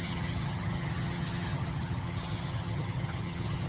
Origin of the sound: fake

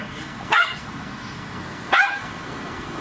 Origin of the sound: fake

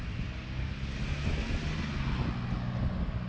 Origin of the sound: real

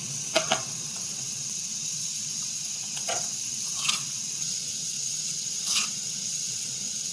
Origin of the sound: fake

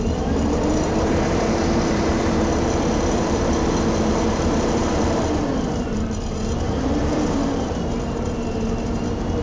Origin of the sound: fake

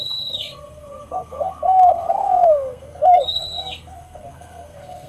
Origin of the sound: fake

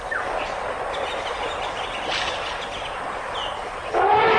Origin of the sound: real